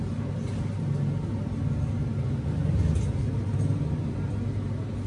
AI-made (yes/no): no